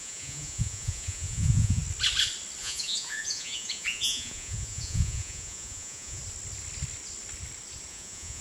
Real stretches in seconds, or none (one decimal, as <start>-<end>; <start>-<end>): 1.8-2.6; 6.2-7.9